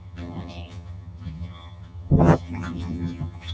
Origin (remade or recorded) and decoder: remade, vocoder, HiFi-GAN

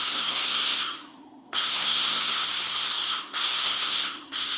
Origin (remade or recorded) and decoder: remade, codec, SNAC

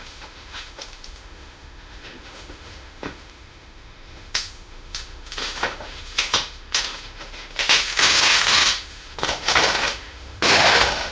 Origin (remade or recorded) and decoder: remade, autoencoder, DAC-VAE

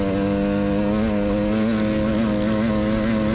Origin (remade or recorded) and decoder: recorded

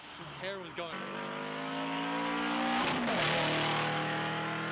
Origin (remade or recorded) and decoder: recorded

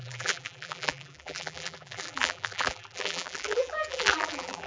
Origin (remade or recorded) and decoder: remade, vocoder, BigVGAN v2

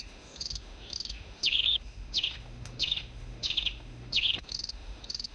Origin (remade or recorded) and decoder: remade, autoencoder, DAC-VAE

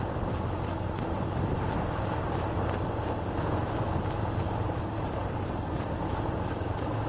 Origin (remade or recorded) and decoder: recorded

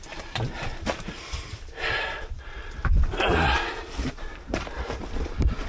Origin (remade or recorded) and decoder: remade, vocoder, BigVGAN v2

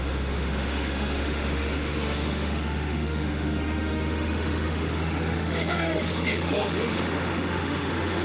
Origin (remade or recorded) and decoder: remade, autoencoder, DAC-VAE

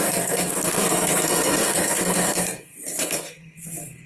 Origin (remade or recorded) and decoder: remade, codec, SNAC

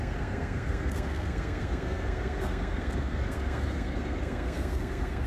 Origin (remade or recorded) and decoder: remade, codec, SNAC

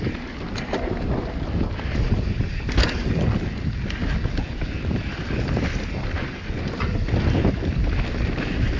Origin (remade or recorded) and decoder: recorded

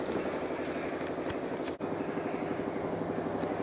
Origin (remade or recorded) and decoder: recorded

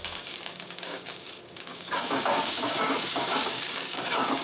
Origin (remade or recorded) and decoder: remade, codec, DAC